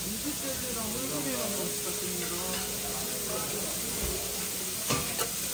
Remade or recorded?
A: recorded